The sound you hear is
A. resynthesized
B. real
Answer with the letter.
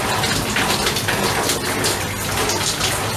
B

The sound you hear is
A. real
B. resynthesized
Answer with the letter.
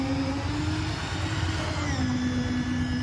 A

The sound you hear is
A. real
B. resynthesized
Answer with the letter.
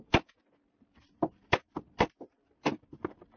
B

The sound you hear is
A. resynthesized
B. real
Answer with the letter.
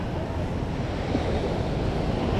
B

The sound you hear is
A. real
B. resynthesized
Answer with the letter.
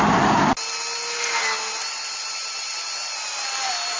A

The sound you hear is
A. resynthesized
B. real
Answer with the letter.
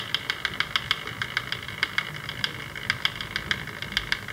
B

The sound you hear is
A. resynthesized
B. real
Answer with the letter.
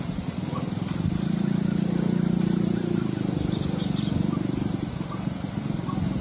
B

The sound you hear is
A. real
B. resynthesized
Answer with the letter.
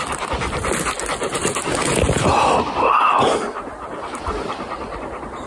A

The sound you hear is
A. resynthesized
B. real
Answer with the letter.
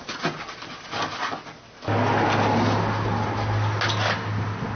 B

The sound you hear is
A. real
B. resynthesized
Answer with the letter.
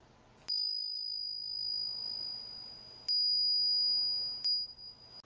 A